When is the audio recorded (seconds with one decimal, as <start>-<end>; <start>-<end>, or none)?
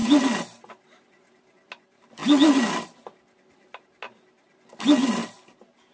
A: 0.0-5.9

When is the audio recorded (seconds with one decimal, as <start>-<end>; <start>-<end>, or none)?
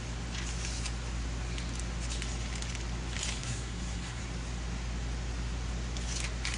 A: 0.0-3.4; 4.2-6.6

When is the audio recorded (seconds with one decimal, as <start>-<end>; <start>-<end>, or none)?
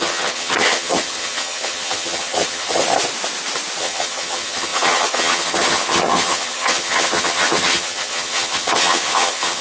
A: 2.8-3.8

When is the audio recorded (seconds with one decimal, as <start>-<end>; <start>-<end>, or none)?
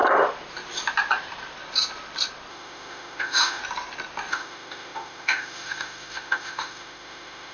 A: 0.0-2.5; 3.6-4.3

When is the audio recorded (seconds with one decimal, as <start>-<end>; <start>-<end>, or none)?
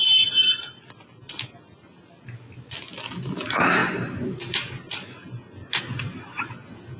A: 0.0-7.0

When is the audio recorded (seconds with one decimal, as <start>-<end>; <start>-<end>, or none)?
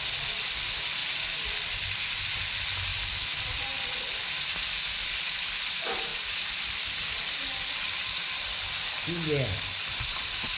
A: 0.0-10.6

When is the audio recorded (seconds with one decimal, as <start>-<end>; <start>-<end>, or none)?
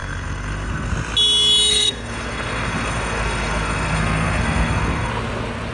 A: 0.9-1.7; 5.1-5.7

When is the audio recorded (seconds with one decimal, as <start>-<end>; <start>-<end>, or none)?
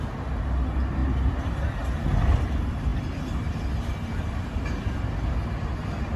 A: 0.0-6.2